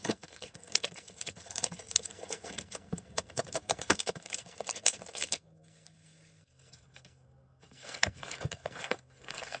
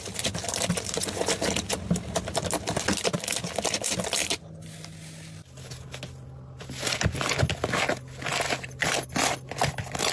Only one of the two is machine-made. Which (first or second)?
first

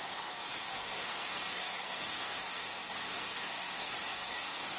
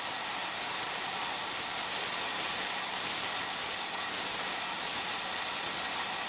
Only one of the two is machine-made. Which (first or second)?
first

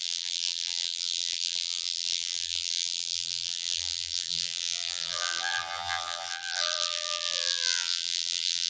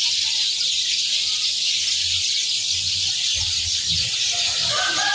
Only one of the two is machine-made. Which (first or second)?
first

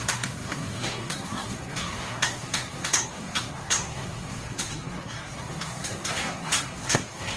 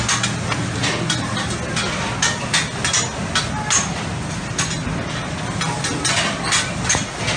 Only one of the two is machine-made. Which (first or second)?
first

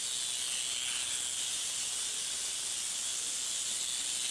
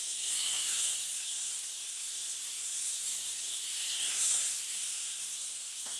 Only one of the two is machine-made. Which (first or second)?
second